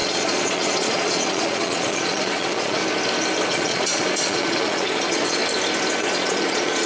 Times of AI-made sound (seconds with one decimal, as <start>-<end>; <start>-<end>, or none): 0.0-2.8; 3.5-5.4; 6.0-6.9